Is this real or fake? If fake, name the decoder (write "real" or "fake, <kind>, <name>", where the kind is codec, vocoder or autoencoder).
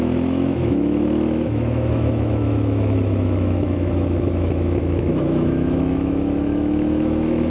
fake, autoencoder, DAC-VAE